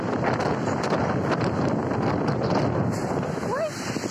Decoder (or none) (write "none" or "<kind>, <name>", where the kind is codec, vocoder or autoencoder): none